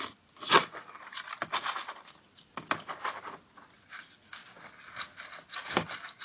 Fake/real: real